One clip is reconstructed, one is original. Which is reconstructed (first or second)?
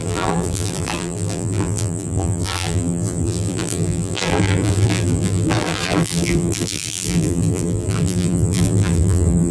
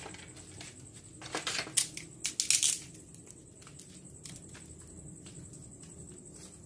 first